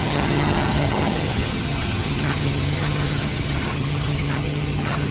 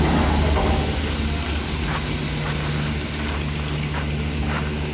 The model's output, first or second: first